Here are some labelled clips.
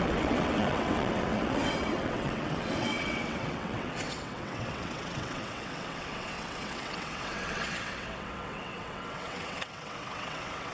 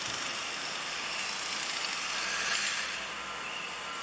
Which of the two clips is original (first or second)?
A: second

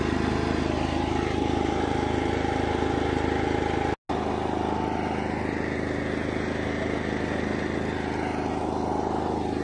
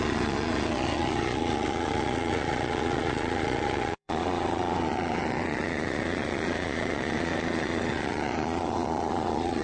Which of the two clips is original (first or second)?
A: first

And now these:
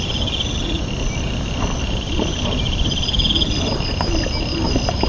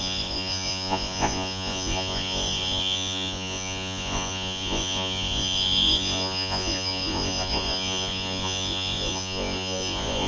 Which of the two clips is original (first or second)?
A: first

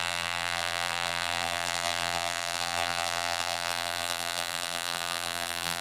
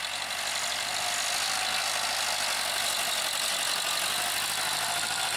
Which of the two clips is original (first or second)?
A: second